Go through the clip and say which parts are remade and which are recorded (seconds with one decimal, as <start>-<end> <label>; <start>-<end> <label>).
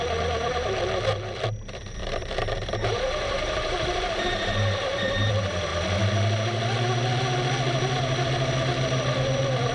0.0-2.0 recorded; 2.0-5.3 remade; 5.3-9.7 recorded